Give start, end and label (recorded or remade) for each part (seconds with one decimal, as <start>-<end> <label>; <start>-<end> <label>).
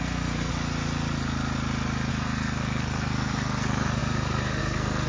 0.0-0.5 remade; 0.5-2.1 recorded; 2.1-5.1 remade